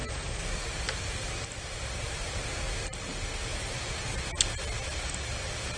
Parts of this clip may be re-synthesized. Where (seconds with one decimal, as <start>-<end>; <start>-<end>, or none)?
0.0-3.0; 3.5-4.2